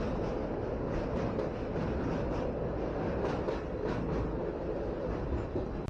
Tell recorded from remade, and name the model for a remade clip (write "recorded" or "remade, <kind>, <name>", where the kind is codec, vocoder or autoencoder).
recorded